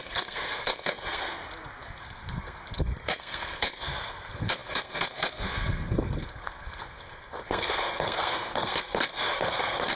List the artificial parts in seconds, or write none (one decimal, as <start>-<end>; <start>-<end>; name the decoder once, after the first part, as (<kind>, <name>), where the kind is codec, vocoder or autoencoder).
0.0-1.4 (codec, SNAC); 2.0-10.0

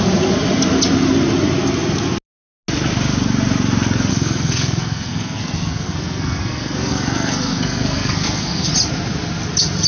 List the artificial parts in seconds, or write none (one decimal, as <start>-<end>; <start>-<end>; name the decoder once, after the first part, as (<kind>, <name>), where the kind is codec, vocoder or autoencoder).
4.1-8.7 (codec, SNAC)

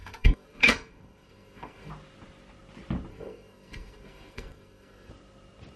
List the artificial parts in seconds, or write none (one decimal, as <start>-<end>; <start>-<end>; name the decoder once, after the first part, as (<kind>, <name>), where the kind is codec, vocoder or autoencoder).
0.0-1.9 (codec, SNAC); 3.1-5.1

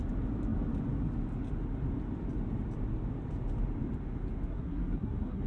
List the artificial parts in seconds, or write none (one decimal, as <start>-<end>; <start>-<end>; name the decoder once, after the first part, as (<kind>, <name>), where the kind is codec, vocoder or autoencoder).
4.5-5.5 (codec, SNAC)